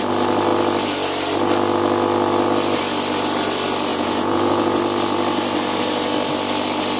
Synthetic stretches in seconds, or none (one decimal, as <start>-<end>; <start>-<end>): 3.9-4.8